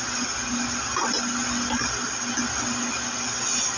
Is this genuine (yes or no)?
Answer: yes